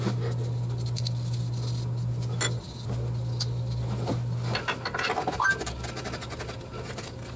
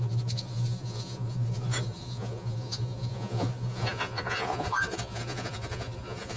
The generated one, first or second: second